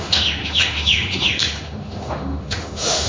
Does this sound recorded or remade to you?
remade